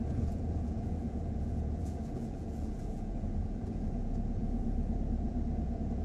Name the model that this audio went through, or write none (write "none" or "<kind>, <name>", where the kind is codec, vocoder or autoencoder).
vocoder, Vocos